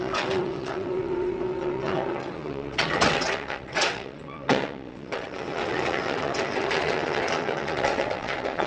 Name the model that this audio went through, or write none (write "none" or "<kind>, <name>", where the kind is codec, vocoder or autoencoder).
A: vocoder, WaveNeXt